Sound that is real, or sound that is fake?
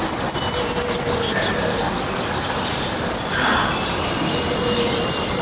real